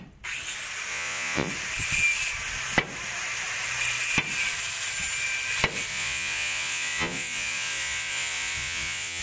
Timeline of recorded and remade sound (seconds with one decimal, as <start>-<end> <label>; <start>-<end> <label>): 0.0-0.9 recorded; 0.9-1.5 remade; 1.5-5.9 recorded; 5.9-9.2 remade